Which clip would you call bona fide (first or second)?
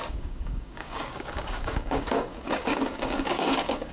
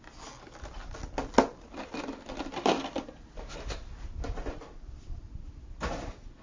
second